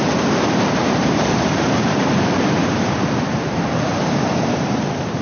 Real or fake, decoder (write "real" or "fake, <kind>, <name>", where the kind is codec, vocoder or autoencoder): fake, vocoder, BigVGAN v2